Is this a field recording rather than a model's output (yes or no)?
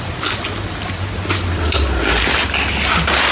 yes